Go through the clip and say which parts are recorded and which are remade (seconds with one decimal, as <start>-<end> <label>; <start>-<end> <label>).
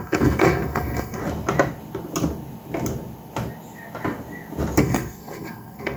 0.0-1.2 remade; 1.2-4.8 recorded; 4.8-6.0 remade